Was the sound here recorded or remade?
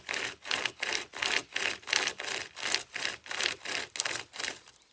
recorded